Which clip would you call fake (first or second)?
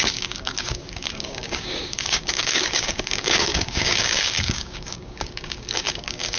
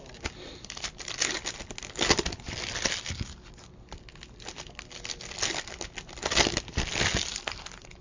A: first